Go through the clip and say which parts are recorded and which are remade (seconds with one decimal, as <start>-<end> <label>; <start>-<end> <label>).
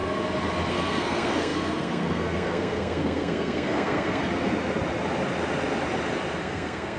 0.0-0.7 recorded; 0.7-4.2 remade; 4.2-6.4 recorded; 6.4-7.0 remade